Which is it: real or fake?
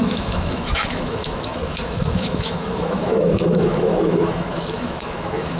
fake